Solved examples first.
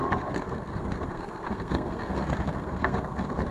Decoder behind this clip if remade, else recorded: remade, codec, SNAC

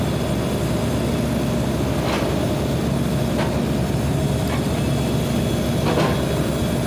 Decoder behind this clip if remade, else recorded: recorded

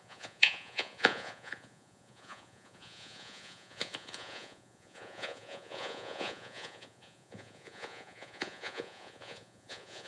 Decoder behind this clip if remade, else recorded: remade, vocoder, Vocos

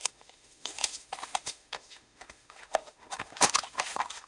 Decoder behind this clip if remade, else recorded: remade, autoencoder, DAC-VAE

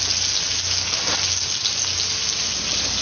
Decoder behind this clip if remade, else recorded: recorded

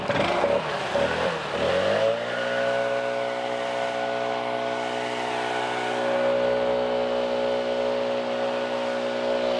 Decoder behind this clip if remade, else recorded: recorded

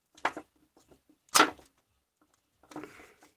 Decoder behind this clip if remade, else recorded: recorded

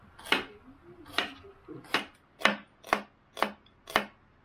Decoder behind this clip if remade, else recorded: recorded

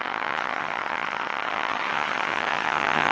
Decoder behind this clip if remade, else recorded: remade, vocoder, HiFi-GAN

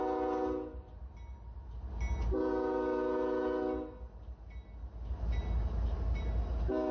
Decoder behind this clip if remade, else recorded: recorded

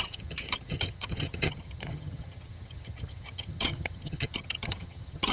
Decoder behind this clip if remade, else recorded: remade, vocoder, HiFi-GAN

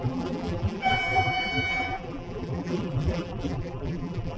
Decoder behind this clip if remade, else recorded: remade, vocoder, BigVGAN v2